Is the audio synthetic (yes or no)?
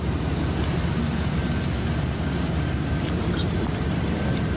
yes